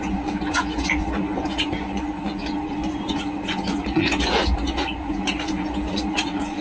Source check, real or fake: fake